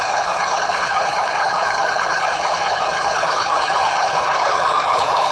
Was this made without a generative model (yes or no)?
no